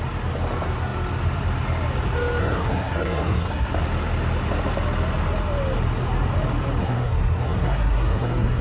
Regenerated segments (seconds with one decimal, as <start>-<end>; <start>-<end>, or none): 2.4-3.7; 6.8-8.6